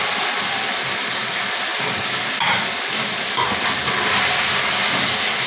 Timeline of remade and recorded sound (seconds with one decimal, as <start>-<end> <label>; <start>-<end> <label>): 0.0-5.5 recorded